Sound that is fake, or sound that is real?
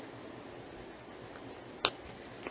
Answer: real